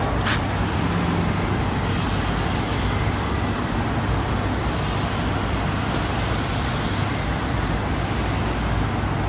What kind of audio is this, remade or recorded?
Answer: recorded